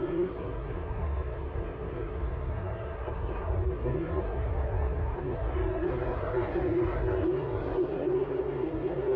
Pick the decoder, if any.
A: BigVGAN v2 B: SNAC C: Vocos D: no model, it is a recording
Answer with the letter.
B